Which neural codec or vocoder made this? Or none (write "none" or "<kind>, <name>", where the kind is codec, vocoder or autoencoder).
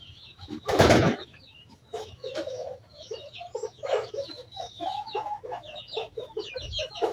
autoencoder, DAC-VAE